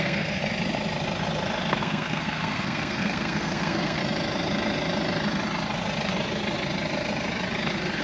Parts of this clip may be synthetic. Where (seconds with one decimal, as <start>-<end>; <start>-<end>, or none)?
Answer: 0.0-0.4; 1.8-4.0